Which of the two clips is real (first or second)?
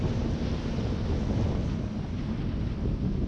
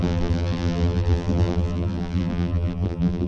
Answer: first